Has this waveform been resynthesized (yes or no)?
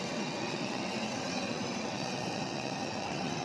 yes